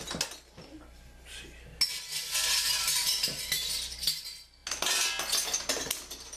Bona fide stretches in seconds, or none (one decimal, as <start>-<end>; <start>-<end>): 0.0-6.4